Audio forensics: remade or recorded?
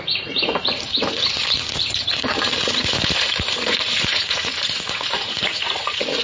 remade